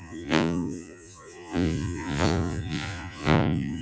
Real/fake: fake